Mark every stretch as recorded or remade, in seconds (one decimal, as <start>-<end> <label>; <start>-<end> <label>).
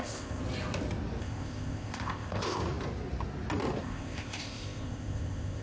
0.0-0.4 remade; 0.4-1.2 recorded; 1.2-2.6 remade; 2.6-3.8 recorded; 3.8-5.6 remade